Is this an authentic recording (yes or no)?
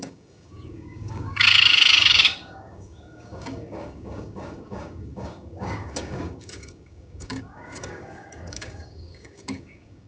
no